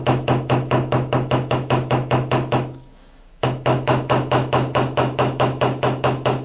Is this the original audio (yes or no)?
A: no